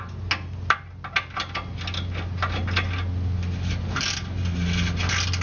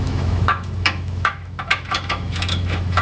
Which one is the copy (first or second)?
second